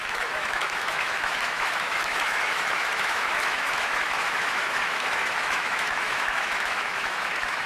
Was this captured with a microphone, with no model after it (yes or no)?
no